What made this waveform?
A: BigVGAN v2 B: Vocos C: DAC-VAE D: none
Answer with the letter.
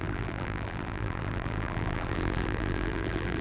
A